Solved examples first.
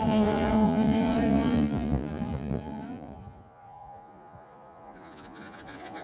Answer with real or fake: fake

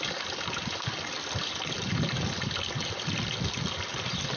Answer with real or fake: real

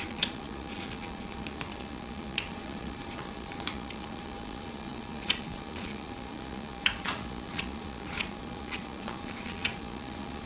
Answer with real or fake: fake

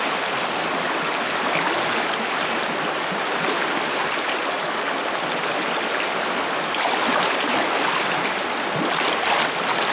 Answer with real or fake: real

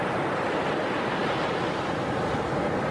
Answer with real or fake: real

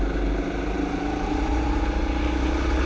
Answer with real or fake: real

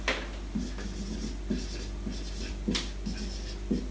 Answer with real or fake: real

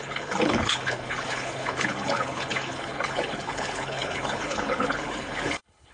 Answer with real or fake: fake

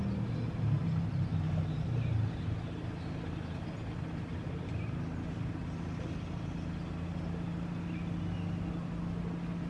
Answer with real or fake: real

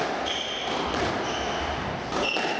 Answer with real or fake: real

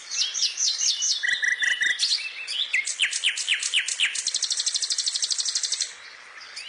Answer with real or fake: real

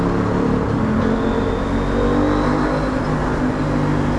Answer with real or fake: real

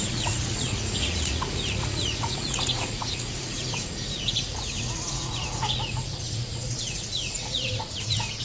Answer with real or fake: fake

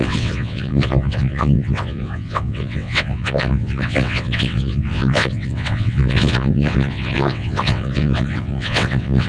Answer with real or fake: fake